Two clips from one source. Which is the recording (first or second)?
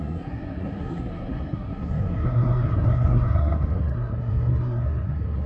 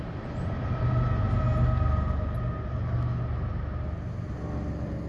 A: second